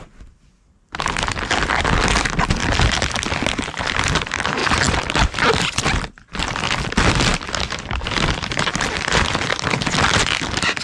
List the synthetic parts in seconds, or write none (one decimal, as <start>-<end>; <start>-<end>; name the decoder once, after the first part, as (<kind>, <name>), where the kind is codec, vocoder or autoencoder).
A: 4.6-6.4 (vocoder, BigVGAN v2)